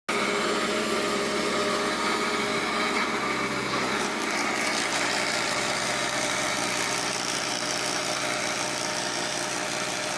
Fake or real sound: real